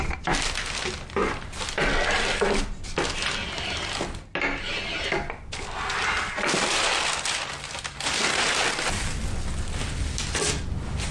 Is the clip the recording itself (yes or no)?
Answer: yes